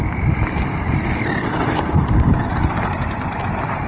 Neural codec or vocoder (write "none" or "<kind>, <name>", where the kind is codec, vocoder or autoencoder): vocoder, BigVGAN v2